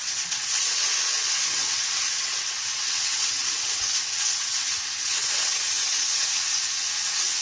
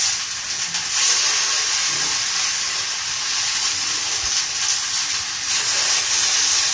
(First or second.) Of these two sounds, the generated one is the first